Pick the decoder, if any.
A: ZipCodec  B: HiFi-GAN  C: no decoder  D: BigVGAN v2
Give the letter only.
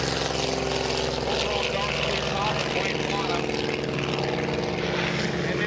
C